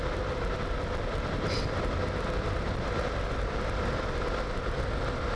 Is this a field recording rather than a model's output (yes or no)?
yes